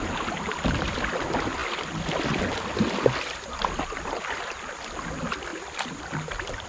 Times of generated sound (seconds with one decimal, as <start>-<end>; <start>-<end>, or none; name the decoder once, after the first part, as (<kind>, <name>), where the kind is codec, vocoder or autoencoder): none

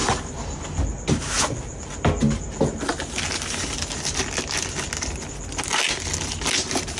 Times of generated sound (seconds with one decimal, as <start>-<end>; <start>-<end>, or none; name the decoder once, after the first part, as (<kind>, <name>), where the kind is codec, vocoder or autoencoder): none